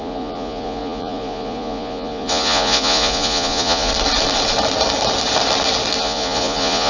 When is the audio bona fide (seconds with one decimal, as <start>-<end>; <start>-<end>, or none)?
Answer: 3.9-6.0